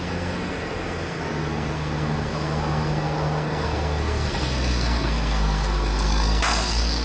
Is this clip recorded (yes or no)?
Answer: no